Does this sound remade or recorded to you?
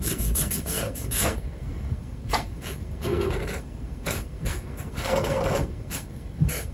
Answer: remade